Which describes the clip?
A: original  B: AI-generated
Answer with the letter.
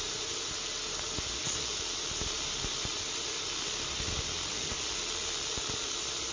A